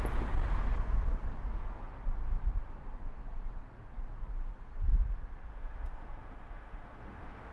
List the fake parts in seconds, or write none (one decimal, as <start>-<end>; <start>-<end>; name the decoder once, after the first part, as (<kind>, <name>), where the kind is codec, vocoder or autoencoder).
5.5-7.5 (autoencoder, DAC-VAE)